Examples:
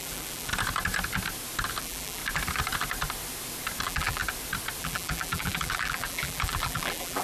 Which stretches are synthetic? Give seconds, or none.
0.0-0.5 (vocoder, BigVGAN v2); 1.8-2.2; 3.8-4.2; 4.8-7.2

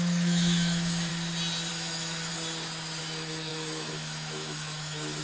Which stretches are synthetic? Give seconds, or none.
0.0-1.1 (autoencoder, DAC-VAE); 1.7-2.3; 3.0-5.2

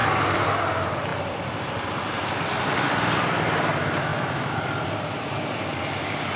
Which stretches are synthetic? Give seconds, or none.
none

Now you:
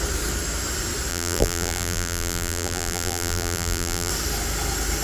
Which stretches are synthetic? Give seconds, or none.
1.1-4.1 (vocoder, BigVGAN v2)

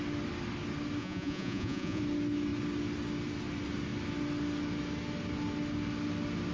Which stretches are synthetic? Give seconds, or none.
1.0-2.0 (vocoder, Vocos)